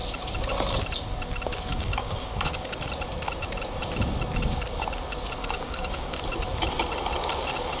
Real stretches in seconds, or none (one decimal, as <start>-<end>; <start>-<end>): 0.0-1.7; 2.8-5.4; 6.2-7.8